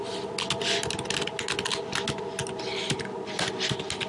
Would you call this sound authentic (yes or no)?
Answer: yes